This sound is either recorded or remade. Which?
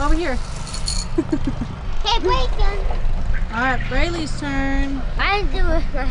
recorded